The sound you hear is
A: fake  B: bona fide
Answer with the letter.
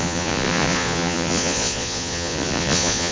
A